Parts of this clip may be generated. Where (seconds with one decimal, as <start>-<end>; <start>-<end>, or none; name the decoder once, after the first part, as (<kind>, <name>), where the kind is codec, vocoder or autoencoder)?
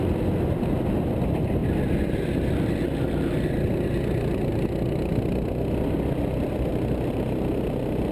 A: 6.7-8.1 (vocoder, BigVGAN v2)